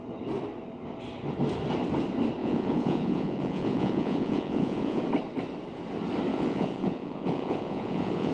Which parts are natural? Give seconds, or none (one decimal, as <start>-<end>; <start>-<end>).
0.0-2.4; 5.0-6.3